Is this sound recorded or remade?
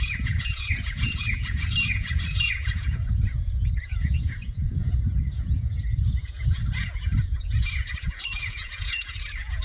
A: remade